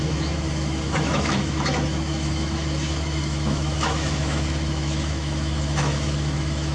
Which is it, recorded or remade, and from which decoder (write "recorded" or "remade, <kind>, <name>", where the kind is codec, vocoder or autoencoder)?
remade, autoencoder, DAC-VAE